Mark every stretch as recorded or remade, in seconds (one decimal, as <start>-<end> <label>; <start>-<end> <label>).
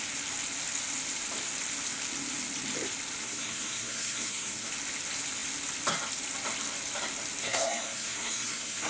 0.0-3.2 recorded; 3.2-4.7 remade; 4.7-7.4 recorded; 7.4-8.9 remade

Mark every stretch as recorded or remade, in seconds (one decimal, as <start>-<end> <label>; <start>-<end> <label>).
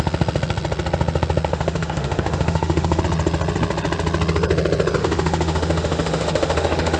0.0-1.5 recorded; 1.5-3.0 remade; 3.0-5.0 recorded; 5.0-7.0 remade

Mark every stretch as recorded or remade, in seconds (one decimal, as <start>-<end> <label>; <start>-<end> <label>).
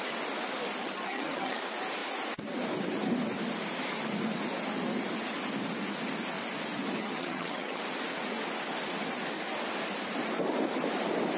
0.0-0.8 recorded; 0.8-1.6 remade; 1.6-7.0 recorded; 7.0-7.8 remade; 7.8-11.4 recorded